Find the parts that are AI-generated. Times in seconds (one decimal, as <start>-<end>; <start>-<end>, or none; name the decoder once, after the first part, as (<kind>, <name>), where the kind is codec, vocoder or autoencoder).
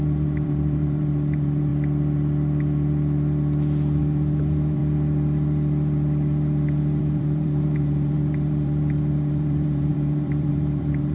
0.0-1.7 (vocoder, BigVGAN v2); 4.0-4.8; 7.0-11.1